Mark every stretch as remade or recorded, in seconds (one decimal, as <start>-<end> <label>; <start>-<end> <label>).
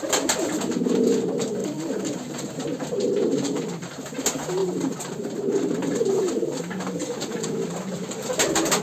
0.0-1.6 recorded; 1.6-3.6 remade; 3.6-4.6 recorded; 4.6-6.6 remade; 6.6-8.8 recorded